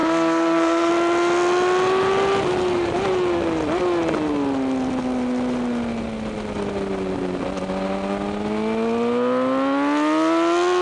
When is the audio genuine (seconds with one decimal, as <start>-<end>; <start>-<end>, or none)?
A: 0.9-10.8